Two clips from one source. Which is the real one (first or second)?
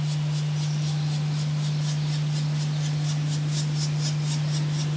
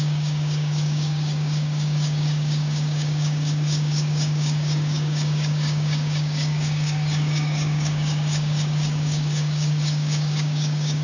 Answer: first